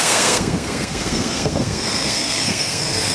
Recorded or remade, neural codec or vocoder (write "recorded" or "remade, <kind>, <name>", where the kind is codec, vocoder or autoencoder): remade, codec, SNAC